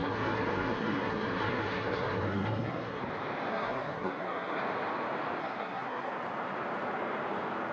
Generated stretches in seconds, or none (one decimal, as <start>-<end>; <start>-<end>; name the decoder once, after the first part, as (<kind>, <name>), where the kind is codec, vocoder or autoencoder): 0.0-3.0 (codec, SNAC); 3.5-4.6; 5.4-6.1